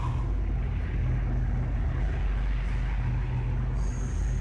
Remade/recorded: recorded